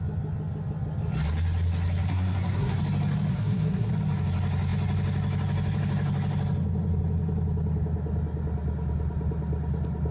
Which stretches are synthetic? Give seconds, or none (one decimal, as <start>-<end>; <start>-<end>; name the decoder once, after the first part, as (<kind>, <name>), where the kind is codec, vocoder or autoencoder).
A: 2.1-2.8 (codec, SNAC); 3.3-3.9